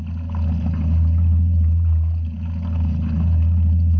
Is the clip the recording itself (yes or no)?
yes